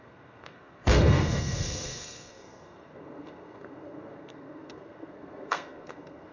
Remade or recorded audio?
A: remade